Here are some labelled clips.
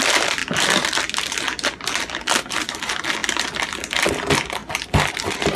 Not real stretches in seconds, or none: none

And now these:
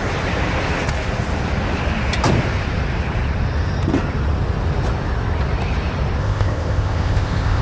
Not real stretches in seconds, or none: 6.2-7.6 (codec, ZipCodec)

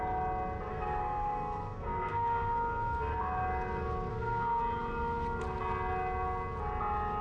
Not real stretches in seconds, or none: 0.7-3.2 (codec, SNAC); 4.1-4.6